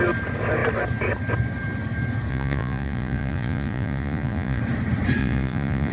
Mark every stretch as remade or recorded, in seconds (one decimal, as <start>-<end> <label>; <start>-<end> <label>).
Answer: 0.0-2.3 recorded; 2.3-4.6 remade; 4.6-5.2 recorded; 5.2-5.9 remade